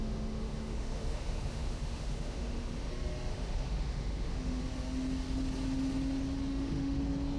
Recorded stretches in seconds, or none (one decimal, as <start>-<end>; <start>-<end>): 2.9-3.3; 4.6-6.5; 7.0-7.4